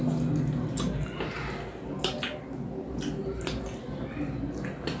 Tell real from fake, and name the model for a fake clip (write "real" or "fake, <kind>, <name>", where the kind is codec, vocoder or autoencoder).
real